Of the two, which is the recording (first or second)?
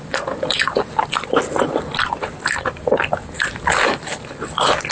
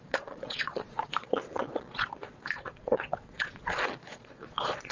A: first